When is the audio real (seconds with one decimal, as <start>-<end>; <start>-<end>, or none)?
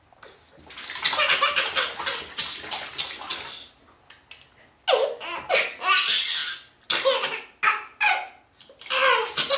0.0-9.6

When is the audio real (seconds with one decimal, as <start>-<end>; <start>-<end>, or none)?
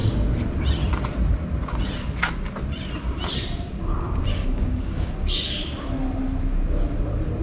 0.0-4.3; 5.1-7.4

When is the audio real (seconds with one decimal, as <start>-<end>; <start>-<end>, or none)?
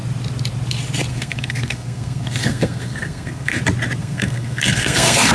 0.0-1.1; 3.6-4.0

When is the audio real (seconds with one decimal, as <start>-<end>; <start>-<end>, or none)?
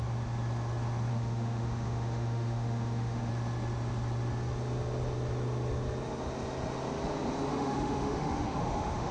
0.0-1.1; 3.3-7.5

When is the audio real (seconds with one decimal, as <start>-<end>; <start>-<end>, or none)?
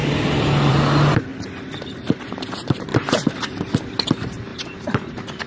0.0-0.7; 1.3-1.8; 2.9-4.1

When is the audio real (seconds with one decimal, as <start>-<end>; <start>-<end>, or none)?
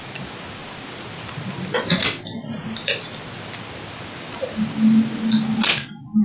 0.0-6.2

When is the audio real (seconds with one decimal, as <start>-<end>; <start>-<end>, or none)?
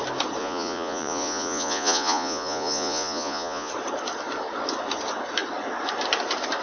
0.0-0.4; 3.7-6.6